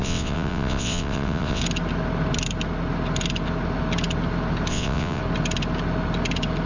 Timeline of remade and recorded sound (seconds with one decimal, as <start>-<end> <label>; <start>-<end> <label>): 0.0-1.6 remade; 1.6-4.7 recorded; 4.7-5.2 remade; 5.2-6.7 recorded